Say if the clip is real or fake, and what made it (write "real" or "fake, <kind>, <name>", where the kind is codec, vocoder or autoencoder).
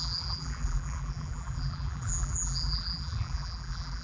fake, vocoder, BigVGAN v2